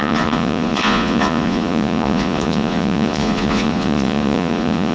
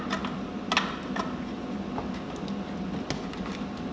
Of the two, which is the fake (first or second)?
first